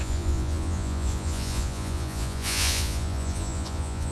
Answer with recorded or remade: remade